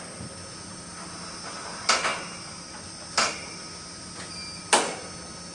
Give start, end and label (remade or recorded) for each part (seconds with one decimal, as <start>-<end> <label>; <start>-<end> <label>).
0.0-5.5 recorded